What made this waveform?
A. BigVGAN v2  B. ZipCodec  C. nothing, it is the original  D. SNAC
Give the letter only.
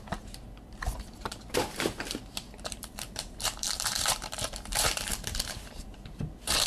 A